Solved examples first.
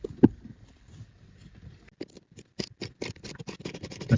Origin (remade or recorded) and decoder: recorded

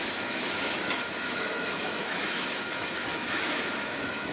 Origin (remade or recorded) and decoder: remade, autoencoder, DAC-VAE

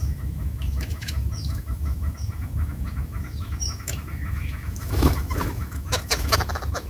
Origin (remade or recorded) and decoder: remade, autoencoder, DAC-VAE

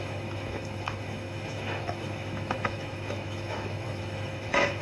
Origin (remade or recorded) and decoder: remade, autoencoder, DAC-VAE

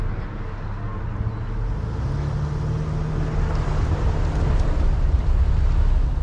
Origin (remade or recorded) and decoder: recorded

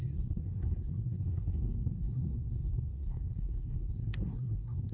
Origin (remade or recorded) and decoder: remade, codec, SNAC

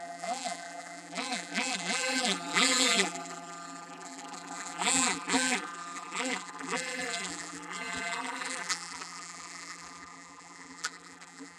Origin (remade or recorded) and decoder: remade, vocoder, BigVGAN v2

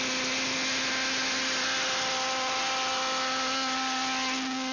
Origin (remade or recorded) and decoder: recorded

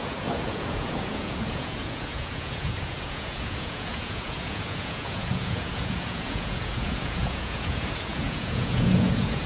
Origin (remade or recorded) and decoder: remade, vocoder, Vocos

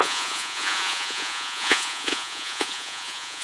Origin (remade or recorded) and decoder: remade, vocoder, Vocos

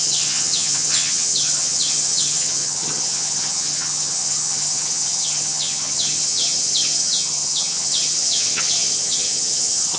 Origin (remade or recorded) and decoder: remade, vocoder, HiFi-GAN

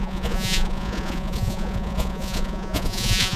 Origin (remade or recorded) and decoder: remade, vocoder, Vocos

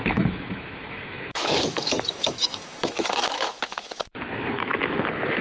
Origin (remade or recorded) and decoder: remade, autoencoder, DAC-VAE